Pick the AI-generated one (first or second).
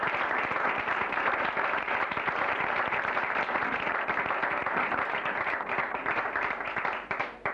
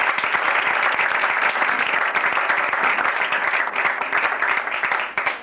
first